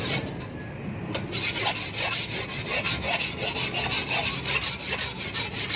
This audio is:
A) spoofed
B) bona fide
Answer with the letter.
B